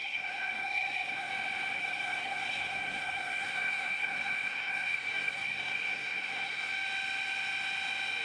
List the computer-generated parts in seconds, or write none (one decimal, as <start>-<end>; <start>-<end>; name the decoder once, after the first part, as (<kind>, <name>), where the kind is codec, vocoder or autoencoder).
0.0-1.3 (codec, SNAC); 1.8-6.7